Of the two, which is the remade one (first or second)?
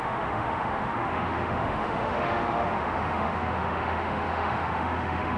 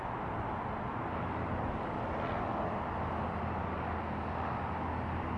first